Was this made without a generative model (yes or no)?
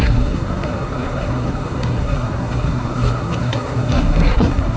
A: no